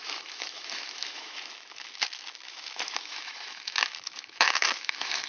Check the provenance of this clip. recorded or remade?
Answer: remade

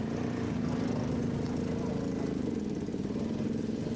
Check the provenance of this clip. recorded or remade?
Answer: recorded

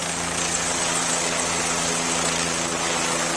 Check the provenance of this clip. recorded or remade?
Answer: recorded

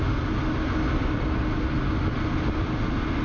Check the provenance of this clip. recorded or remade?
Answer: recorded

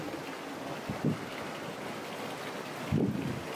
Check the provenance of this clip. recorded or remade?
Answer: recorded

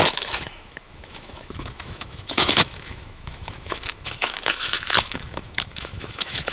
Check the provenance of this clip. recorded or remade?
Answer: remade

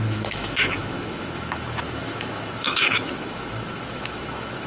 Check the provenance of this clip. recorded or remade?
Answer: remade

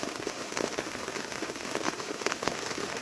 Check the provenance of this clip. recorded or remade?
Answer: remade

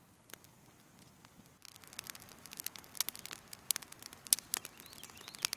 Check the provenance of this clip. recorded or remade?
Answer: recorded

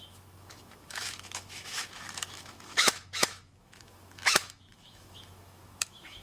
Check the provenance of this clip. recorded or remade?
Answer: remade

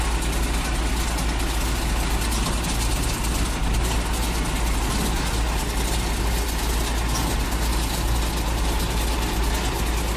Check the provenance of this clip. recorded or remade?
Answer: recorded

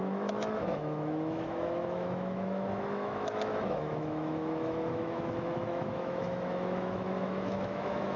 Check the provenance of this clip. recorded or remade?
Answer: remade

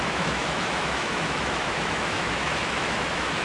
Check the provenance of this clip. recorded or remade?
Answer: remade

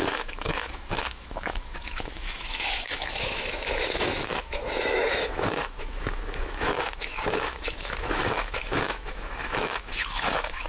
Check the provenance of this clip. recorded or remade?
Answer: remade